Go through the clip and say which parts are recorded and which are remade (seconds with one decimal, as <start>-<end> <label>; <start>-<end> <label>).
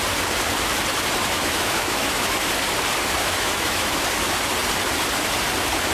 0.0-1.2 recorded; 1.2-2.5 remade; 2.5-3.2 recorded; 3.2-4.0 remade; 4.0-5.9 recorded